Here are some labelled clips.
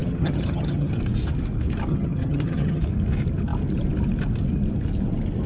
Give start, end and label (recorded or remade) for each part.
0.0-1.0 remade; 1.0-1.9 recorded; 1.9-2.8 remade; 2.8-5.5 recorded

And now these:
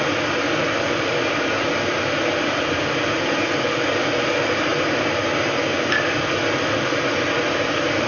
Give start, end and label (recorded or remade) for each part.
0.0-8.1 recorded

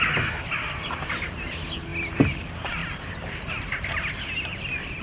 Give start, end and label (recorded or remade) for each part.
0.0-2.8 recorded; 2.8-4.0 remade; 4.0-5.0 recorded

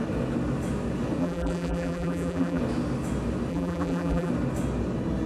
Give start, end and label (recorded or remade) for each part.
0.0-1.2 recorded; 1.2-2.6 remade; 2.6-3.5 recorded; 3.5-4.3 remade; 4.3-5.3 recorded

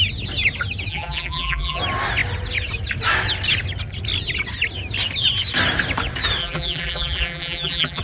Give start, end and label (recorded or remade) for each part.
0.0-0.9 recorded; 0.9-1.8 remade; 1.8-6.4 recorded; 6.4-8.0 remade

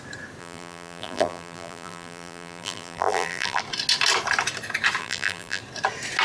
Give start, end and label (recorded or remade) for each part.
0.0-0.4 recorded; 0.4-3.6 remade; 3.6-5.0 recorded; 5.0-5.6 remade; 5.6-6.2 recorded